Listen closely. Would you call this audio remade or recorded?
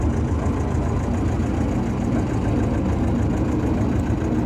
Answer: recorded